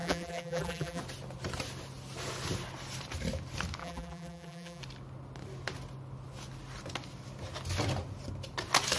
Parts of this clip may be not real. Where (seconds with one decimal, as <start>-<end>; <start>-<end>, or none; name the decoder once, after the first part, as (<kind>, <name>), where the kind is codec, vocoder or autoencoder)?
0.0-1.0 (vocoder, BigVGAN v2); 3.8-4.8